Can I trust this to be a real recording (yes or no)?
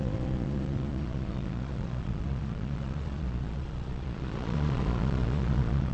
no